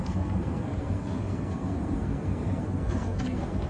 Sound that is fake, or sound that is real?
fake